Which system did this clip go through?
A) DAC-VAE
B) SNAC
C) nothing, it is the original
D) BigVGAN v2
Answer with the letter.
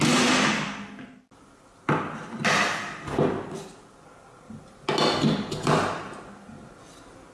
C